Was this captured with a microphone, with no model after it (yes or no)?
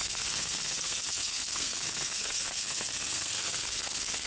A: no